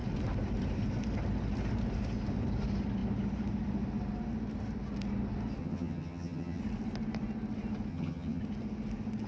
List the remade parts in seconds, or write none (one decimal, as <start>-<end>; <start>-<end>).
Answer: 5.6-6.6; 7.9-8.4